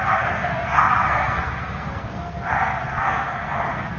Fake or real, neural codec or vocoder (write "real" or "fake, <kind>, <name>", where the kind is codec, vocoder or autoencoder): fake, codec, SNAC